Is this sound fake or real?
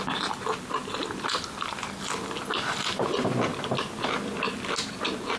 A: real